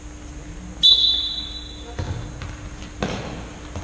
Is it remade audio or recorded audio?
recorded